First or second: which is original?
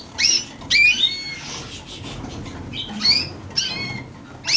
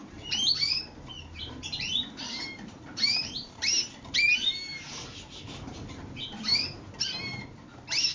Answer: first